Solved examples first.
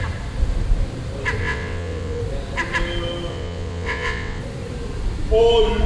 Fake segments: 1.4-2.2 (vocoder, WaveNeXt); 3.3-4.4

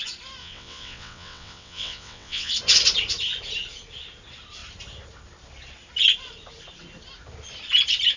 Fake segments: 0.4-2.5 (vocoder, WaveNeXt)